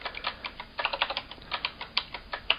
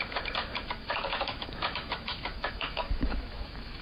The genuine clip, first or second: first